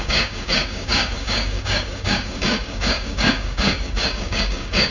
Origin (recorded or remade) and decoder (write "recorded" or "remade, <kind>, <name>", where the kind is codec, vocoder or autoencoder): remade, codec, DAC